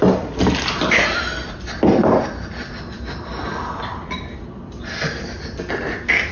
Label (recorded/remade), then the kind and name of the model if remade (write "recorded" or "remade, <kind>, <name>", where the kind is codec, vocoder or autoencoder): recorded